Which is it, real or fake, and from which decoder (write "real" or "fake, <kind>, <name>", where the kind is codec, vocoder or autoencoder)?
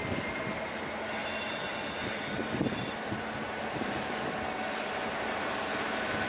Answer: real